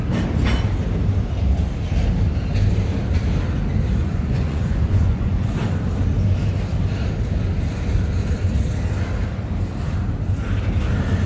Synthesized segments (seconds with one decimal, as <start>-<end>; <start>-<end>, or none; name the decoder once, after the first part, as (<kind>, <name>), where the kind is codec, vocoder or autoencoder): 4.0-5.6 (vocoder, Vocos)